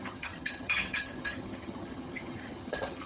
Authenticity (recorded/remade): remade